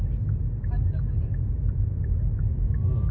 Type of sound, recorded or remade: recorded